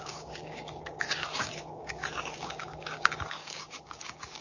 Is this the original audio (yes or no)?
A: no